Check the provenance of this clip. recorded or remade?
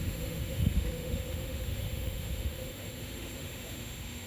remade